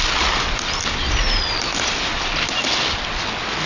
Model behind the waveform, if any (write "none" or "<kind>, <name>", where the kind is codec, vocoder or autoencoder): none